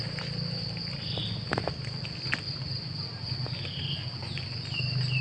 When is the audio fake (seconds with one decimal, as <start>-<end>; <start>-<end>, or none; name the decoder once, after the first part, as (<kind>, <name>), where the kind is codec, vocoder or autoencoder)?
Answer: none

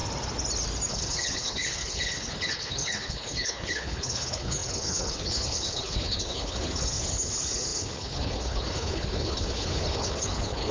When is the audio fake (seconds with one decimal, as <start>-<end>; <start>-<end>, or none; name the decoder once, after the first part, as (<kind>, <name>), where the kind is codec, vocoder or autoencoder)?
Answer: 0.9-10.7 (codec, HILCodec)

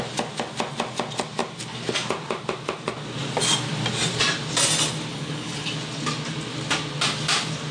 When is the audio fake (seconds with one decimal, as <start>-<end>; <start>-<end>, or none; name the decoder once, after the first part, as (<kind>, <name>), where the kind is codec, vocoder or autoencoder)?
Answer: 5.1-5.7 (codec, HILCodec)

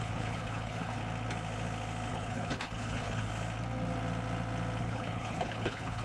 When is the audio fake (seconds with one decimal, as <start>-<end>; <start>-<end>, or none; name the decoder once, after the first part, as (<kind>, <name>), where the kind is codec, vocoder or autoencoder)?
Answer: 0.0-1.0 (codec, HILCodec); 2.1-3.3; 4.8-6.0

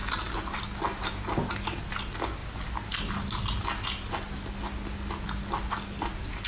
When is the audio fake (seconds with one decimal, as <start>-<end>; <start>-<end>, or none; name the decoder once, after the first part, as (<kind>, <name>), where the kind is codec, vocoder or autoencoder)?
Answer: none

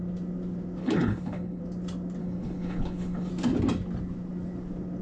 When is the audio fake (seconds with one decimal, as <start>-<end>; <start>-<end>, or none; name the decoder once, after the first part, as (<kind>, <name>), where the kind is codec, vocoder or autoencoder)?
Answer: 0.8-1.6 (codec, HILCodec); 2.2-3.3